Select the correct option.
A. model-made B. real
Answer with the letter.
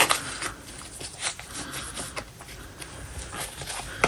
B